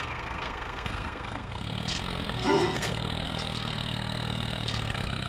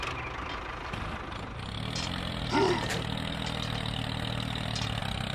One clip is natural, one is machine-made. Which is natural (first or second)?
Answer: second